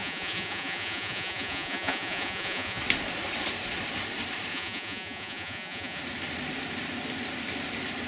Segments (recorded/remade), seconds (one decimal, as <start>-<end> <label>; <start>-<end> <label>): 0.0-2.8 remade; 2.8-4.5 recorded; 4.5-6.0 remade; 6.0-8.1 recorded